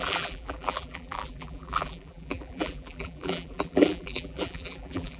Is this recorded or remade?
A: remade